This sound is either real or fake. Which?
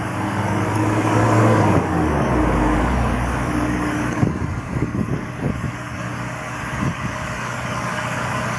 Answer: fake